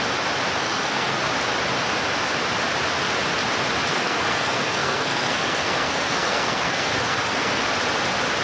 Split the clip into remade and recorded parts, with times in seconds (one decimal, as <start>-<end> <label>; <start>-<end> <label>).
0.0-0.6 recorded; 0.6-1.3 remade; 1.3-3.9 recorded; 3.9-7.6 remade; 7.6-8.4 recorded